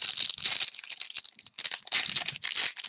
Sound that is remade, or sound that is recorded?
recorded